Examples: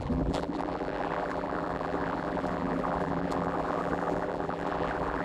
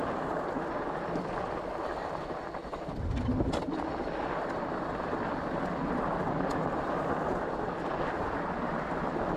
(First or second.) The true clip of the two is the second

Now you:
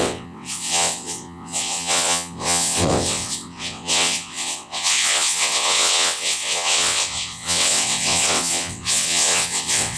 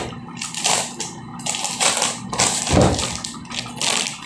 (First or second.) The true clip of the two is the second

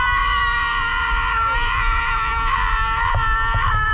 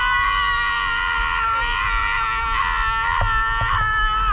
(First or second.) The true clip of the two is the second